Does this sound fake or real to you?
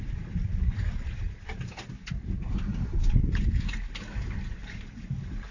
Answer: real